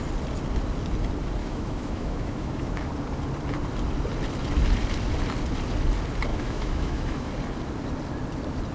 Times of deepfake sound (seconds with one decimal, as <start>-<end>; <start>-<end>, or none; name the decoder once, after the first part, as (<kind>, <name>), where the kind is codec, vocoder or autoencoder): 1.4-2.9 (autoencoder, DAC-VAE); 6.3-7.3